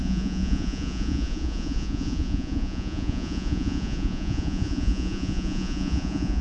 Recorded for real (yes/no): no